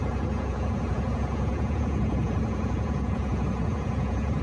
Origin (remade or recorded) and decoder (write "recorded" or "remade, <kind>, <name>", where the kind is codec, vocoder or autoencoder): remade, vocoder, Vocos